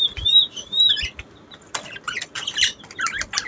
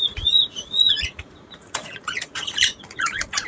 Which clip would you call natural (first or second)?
first